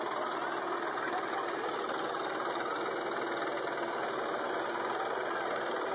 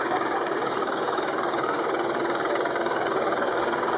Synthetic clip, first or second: second